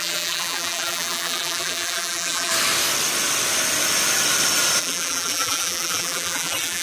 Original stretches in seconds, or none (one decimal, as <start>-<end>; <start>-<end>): 2.5-4.8